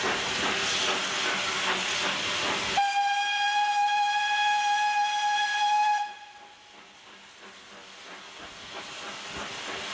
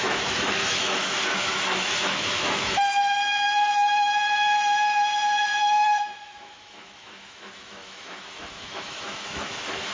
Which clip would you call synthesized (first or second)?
second